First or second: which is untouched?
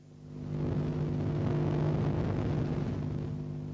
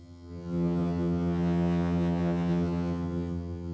first